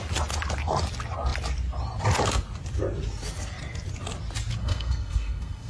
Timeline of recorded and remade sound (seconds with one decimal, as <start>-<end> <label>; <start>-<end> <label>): 0.0-4.6 recorded; 4.6-5.7 remade